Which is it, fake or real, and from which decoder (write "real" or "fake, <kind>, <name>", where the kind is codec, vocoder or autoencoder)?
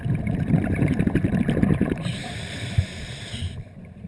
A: fake, vocoder, BigVGAN v2